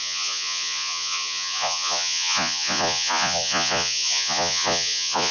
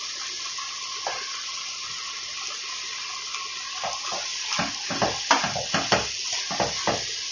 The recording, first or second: second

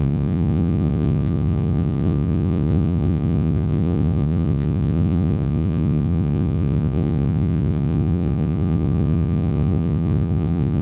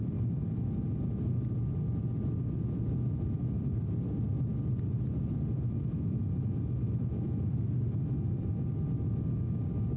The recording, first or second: second